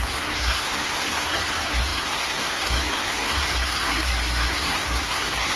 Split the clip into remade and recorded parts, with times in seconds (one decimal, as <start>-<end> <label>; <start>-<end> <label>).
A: 0.0-5.6 remade